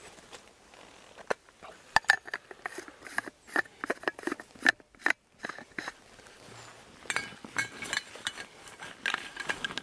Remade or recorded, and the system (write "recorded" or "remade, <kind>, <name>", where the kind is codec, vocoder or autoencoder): recorded